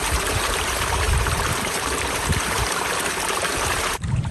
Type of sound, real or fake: fake